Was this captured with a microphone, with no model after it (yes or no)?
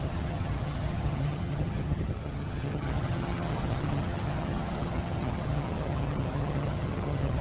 no